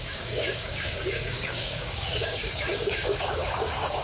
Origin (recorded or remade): remade